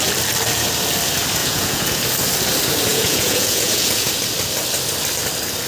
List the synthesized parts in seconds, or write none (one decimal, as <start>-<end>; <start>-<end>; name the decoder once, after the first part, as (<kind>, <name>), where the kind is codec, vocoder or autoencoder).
1.4-2.0 (vocoder, Vocos); 2.9-4.1